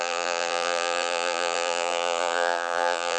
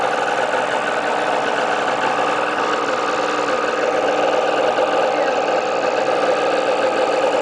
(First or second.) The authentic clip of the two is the second